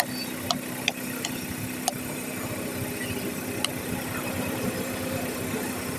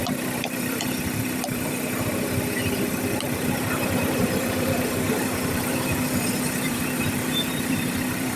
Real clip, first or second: first